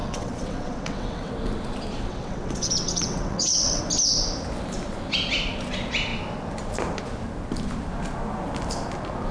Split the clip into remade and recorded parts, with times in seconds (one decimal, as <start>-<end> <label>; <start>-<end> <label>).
0.0-1.3 remade; 1.3-2.1 recorded; 2.1-3.8 remade; 3.8-9.3 recorded